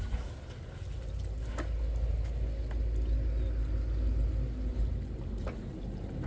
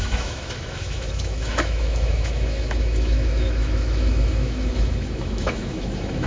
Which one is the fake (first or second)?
second